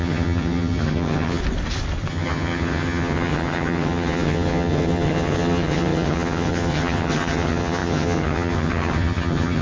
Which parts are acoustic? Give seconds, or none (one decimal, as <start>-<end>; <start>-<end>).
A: 1.4-2.1

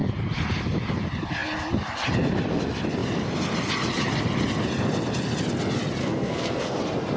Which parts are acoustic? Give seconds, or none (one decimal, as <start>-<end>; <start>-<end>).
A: 0.0-6.0; 6.8-7.2

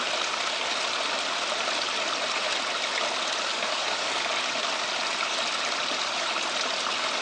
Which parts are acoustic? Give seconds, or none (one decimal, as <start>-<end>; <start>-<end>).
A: 0.0-3.5; 4.2-7.2

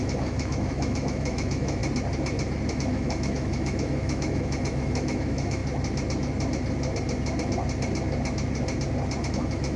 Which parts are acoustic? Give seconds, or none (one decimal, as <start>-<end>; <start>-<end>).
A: 1.8-2.7; 5.6-9.3